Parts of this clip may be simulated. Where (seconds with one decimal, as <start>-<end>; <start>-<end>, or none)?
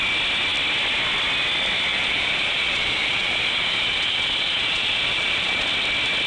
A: 1.9-5.7